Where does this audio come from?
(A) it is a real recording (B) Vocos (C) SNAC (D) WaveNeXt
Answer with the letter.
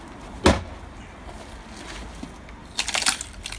A